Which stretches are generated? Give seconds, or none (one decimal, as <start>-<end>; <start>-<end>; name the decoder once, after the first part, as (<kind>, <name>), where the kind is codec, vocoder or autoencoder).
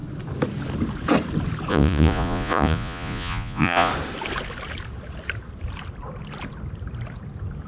1.7-3.9 (vocoder, Vocos)